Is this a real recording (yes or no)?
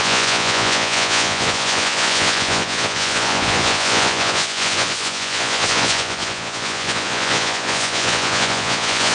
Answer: no